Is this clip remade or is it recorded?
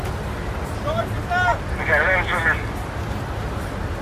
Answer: recorded